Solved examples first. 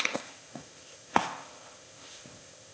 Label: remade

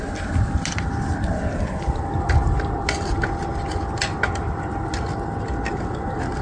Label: recorded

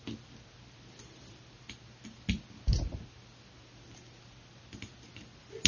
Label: recorded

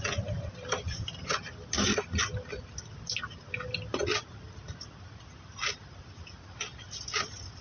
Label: recorded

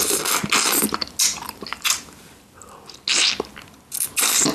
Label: recorded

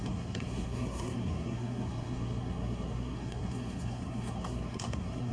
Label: remade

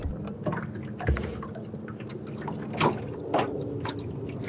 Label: recorded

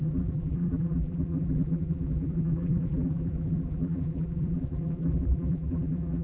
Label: remade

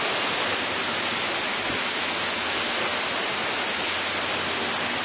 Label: recorded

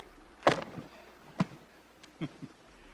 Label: recorded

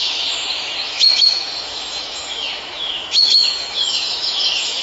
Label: remade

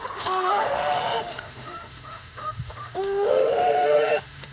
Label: remade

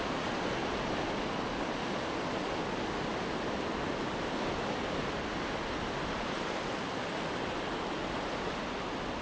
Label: recorded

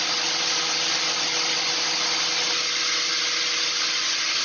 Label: recorded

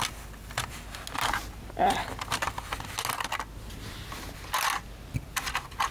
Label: recorded